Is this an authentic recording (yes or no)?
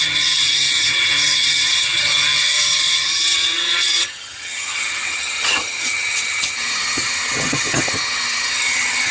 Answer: no